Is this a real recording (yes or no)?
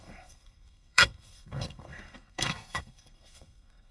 no